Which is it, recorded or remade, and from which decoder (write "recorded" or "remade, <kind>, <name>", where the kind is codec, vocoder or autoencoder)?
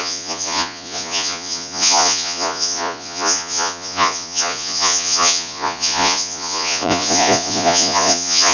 remade, vocoder, Vocos